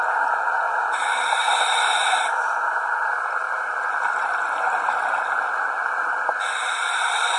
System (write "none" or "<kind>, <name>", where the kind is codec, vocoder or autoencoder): none